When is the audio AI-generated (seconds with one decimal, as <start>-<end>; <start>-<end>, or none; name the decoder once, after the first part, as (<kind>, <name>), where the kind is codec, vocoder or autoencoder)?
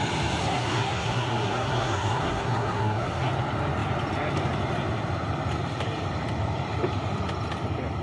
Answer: 0.4-3.3 (codec, SNAC)